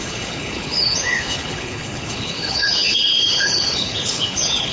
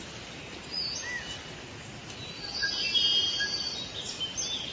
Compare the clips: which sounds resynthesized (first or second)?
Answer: first